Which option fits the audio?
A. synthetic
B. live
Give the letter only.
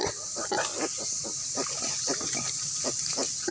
B